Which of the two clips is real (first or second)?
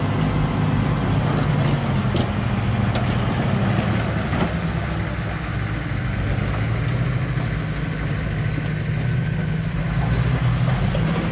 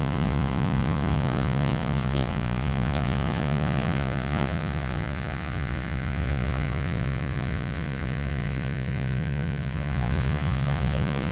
first